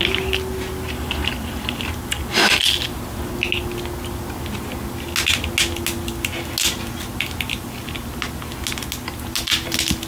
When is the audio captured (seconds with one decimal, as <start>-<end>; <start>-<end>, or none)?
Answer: 0.0-10.1